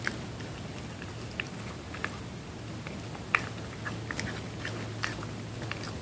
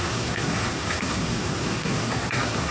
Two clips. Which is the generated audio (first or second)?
second